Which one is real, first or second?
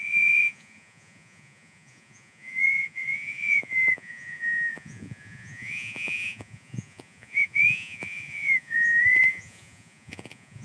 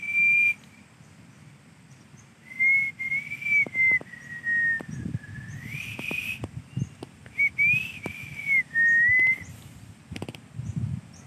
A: second